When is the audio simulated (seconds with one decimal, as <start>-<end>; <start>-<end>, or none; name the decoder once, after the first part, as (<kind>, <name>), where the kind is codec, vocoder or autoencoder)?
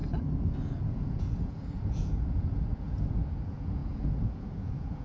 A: 0.6-5.0 (vocoder, Vocos)